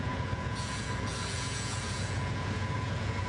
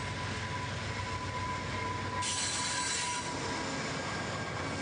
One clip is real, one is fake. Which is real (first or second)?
second